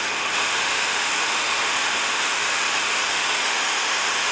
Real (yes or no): no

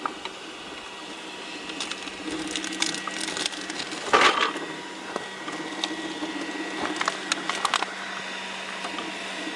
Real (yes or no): yes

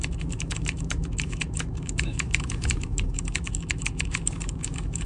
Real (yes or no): no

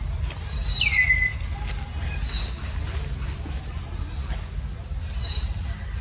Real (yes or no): yes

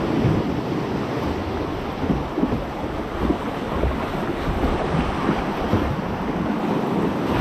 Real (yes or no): yes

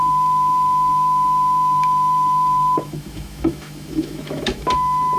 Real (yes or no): no